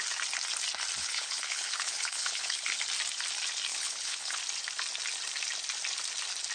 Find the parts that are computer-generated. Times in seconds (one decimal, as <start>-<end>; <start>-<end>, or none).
1.0-2.8; 3.7-4.4